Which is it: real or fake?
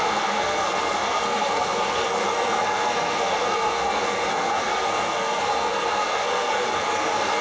fake